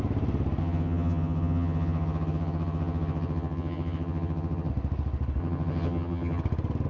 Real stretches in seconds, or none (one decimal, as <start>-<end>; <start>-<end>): 0.0-0.6; 4.7-5.4; 6.4-6.9